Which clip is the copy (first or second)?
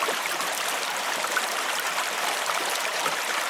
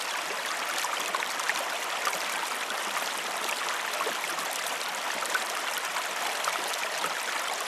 first